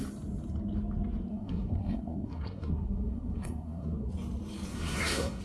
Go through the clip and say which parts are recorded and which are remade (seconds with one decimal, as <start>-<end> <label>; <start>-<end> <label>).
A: 0.0-1.3 recorded; 1.3-4.1 remade; 4.1-4.7 recorded; 4.7-5.4 remade